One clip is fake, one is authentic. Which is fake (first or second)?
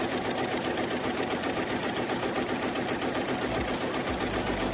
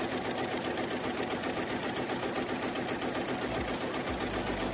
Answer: first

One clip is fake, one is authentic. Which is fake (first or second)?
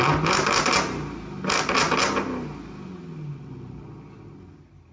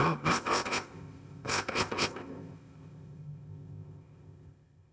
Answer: second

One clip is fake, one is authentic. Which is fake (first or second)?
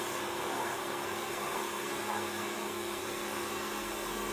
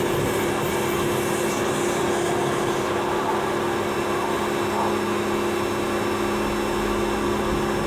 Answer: first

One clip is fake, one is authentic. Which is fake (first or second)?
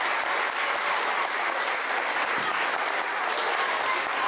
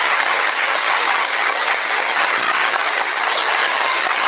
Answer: second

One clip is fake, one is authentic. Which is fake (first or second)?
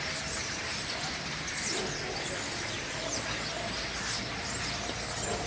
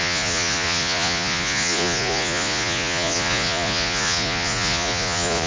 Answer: second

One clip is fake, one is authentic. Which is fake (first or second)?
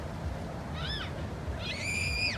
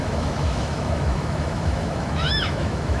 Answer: second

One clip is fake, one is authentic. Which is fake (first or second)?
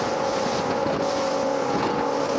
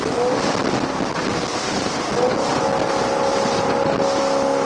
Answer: first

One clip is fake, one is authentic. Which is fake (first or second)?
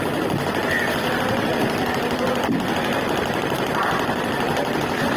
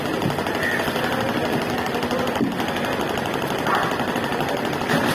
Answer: first